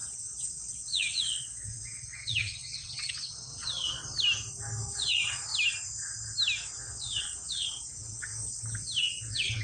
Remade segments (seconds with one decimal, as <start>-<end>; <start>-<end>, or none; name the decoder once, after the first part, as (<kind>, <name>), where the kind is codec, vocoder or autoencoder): 0.0-4.0 (vocoder, WaveNeXt); 4.9-5.5; 6.8-8.3; 9.0-9.6